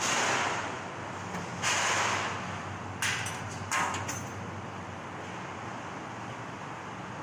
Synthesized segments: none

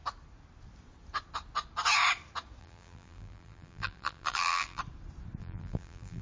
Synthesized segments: 2.6-4.8 (vocoder, BigVGAN v2); 5.4-6.2

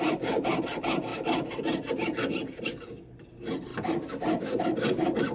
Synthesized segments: 0.0-1.1 (vocoder, BigVGAN v2); 1.9-3.7; 4.6-5.3

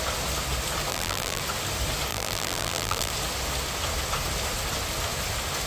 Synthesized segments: 0.9-1.4 (vocoder, BigVGAN v2); 2.1-3.1

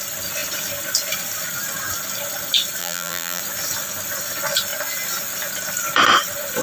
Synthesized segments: 2.8-3.4 (vocoder, BigVGAN v2)

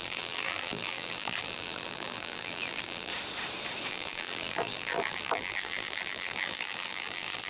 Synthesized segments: 0.0-3.1 (vocoder, BigVGAN v2); 3.9-7.5

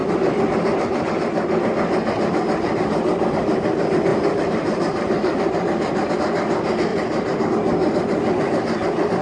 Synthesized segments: 4.1-6.1 (vocoder, BigVGAN v2); 6.9-7.5